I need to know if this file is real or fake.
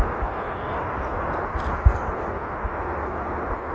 real